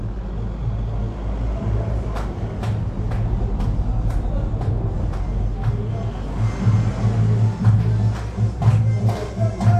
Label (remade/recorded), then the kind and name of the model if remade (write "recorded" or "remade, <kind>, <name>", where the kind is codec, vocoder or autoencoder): recorded